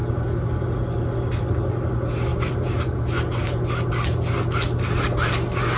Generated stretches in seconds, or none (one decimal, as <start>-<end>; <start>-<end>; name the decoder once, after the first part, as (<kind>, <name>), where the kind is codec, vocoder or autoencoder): 2.3-3.0 (vocoder, BigVGAN v2)